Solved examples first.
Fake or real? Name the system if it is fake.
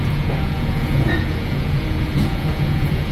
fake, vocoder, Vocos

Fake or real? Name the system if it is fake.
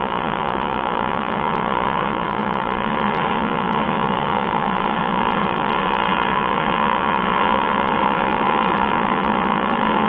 fake, vocoder, Vocos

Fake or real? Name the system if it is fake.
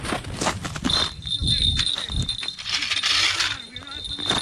real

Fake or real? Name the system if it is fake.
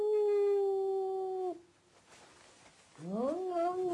real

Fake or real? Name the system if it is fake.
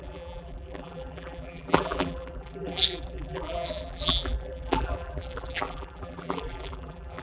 fake, vocoder, BigVGAN v2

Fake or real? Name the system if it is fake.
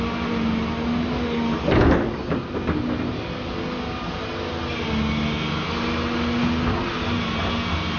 real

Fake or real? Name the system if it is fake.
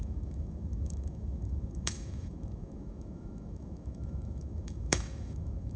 fake, autoencoder, DAC-VAE